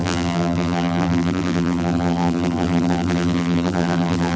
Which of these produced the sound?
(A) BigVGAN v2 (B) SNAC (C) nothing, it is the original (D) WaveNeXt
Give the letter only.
A